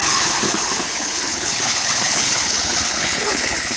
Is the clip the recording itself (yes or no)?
no